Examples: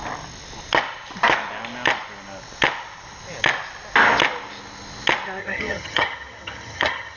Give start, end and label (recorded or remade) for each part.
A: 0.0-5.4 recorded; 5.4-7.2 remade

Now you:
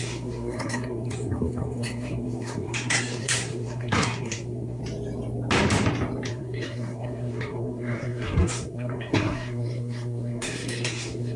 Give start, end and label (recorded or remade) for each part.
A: 0.0-4.8 remade; 4.8-6.3 recorded; 6.3-11.4 remade

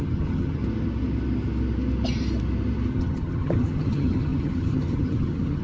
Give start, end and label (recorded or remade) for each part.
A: 0.0-0.6 remade; 0.6-2.9 recorded; 2.9-5.6 remade

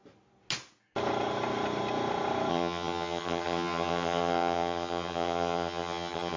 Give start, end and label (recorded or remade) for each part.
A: 0.0-2.5 recorded; 2.5-6.4 remade

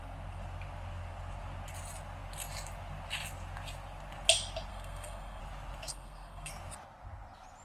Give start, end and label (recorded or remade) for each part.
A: 0.0-4.7 recorded; 4.7-5.4 remade; 5.4-5.9 recorded; 5.9-6.5 remade; 6.5-7.6 recorded

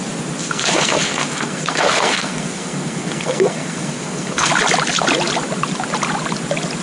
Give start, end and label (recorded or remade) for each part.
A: 0.0-0.4 recorded; 0.4-4.5 remade; 4.5-6.8 recorded

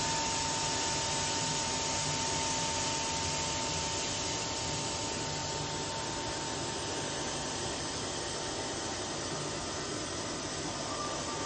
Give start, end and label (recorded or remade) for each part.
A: 0.0-11.5 recorded

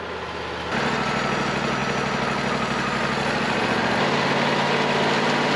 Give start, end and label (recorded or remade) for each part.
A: 0.0-5.6 recorded